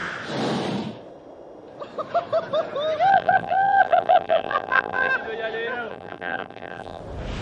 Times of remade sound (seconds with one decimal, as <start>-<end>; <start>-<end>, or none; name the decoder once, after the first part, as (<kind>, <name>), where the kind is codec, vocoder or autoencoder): 3.1-5.1 (vocoder, BigVGAN v2); 5.9-7.0